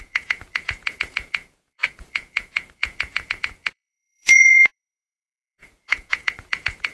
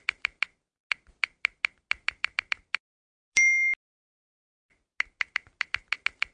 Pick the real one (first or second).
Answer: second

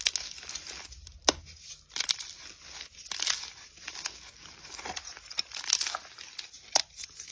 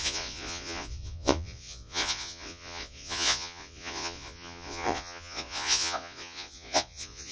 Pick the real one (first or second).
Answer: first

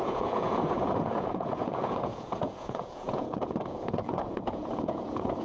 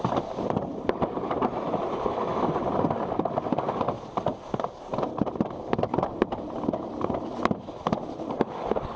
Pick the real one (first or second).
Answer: second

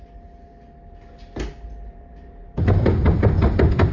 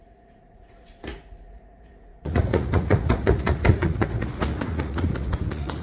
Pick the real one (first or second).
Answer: first